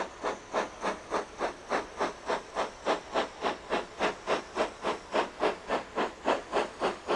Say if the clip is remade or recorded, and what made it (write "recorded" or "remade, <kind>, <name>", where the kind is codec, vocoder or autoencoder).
recorded